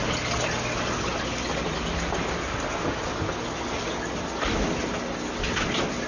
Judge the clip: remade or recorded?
recorded